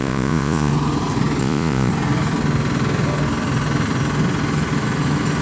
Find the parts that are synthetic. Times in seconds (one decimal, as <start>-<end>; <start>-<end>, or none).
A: 0.0-0.7; 1.4-1.9